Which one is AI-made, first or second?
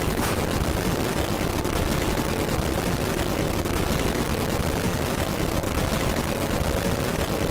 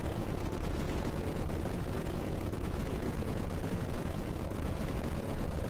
second